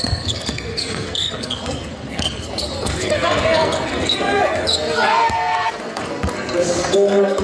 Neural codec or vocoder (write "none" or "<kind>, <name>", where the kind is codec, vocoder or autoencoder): codec, SNAC